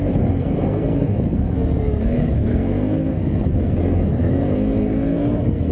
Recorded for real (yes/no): no